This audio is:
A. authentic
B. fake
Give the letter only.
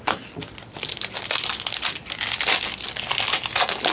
A